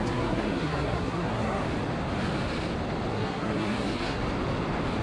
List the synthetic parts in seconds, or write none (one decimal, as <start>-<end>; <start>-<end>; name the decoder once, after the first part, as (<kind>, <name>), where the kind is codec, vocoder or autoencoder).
0.0-1.6 (codec, SNAC); 3.1-4.2